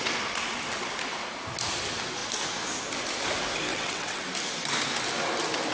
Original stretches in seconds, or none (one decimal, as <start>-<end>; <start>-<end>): 0.0-3.7; 4.3-5.7